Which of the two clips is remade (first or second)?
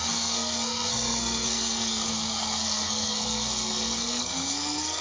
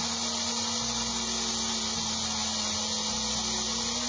first